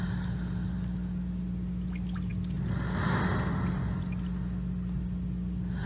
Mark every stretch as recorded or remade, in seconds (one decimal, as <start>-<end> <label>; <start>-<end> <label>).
0.0-5.9 recorded